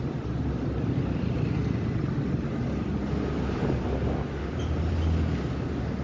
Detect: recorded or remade recorded